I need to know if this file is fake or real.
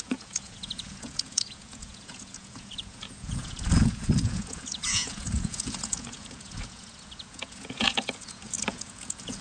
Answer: fake